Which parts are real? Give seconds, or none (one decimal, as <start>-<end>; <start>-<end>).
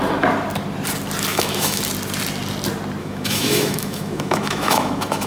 0.0-1.3; 1.8-3.0